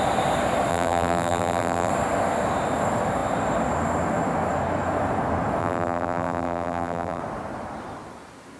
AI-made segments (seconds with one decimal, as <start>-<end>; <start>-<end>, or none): 0.7-1.9; 5.6-7.2